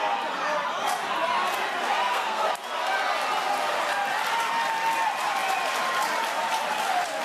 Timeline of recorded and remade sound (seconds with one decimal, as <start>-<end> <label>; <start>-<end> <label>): 0.0-2.0 recorded; 2.0-2.5 remade; 2.5-7.2 recorded